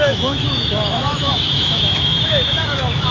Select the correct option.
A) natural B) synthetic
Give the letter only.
B